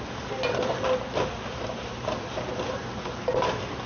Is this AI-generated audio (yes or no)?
no